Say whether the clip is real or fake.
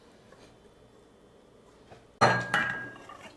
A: real